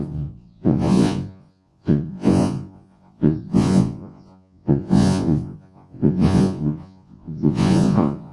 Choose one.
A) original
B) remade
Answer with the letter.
B